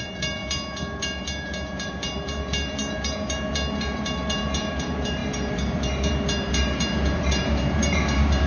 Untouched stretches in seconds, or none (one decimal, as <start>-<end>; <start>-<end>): none